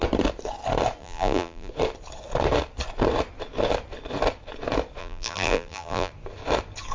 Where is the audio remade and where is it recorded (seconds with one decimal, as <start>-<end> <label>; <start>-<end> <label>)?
0.0-1.0 recorded; 1.0-1.7 remade; 1.7-5.0 recorded; 5.0-6.1 remade; 6.1-6.9 recorded